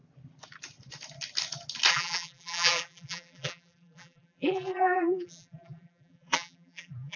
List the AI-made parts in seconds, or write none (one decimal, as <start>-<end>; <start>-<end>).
1.9-7.2